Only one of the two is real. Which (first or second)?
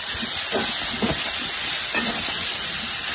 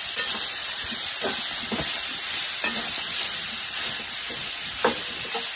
first